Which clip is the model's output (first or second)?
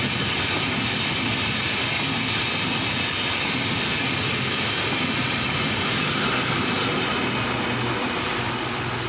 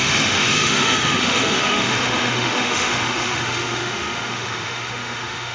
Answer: second